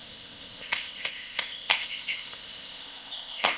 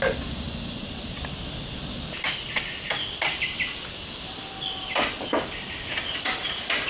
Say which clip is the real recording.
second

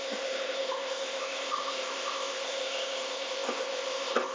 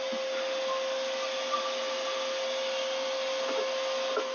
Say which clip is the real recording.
second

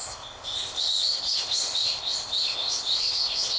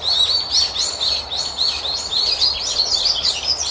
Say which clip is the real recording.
second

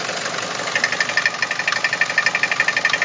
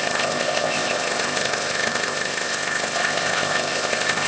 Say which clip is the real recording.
first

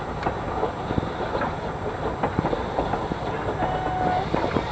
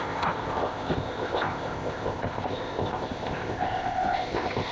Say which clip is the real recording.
first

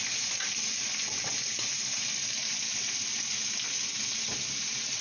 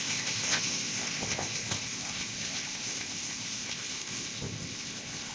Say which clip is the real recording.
first